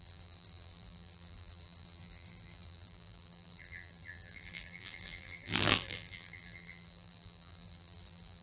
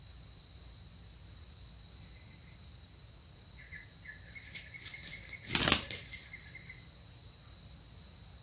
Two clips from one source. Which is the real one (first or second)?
second